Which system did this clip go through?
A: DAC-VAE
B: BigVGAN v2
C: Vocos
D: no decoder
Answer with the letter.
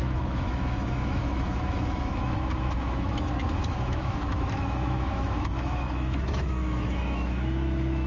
A